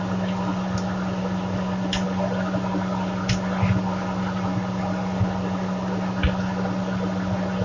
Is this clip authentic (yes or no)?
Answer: yes